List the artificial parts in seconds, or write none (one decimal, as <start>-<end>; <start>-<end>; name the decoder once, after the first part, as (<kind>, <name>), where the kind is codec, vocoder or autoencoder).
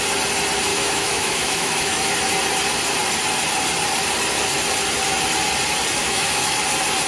0.7-2.1 (autoencoder, DAC-VAE); 6.0-6.6